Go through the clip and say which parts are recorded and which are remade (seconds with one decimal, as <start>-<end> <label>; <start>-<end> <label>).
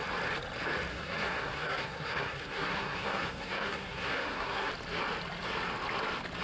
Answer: 0.0-0.9 recorded; 0.9-4.7 remade; 4.7-6.4 recorded